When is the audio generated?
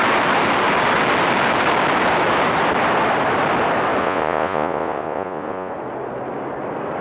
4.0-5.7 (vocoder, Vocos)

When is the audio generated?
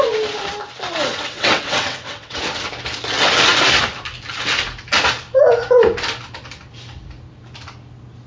1.1-2.4 (vocoder, WaveNeXt)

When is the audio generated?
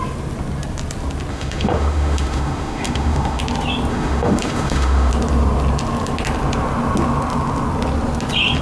1.3-3.4 (autoencoder, DAC-VAE); 3.9-5.1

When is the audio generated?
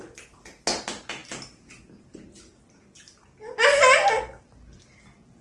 none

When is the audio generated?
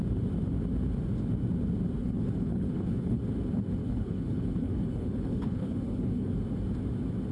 2.0-3.2 (codec, HILCodec); 3.8-6.3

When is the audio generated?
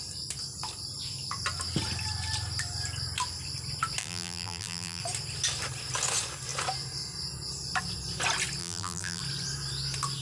4.0-5.0 (vocoder, BigVGAN v2); 8.6-9.2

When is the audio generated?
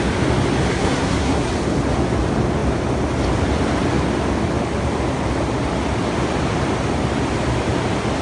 0.7-1.5 (codec, SNAC)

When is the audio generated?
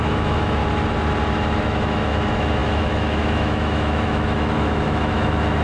0.0-0.6 (autoencoder, DAC-VAE); 1.6-5.6